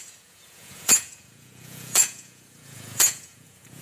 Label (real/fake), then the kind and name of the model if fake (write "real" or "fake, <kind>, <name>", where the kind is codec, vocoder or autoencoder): fake, vocoder, Vocos